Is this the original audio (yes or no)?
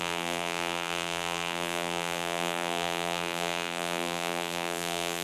no